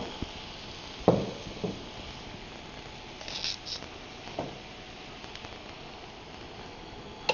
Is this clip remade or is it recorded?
recorded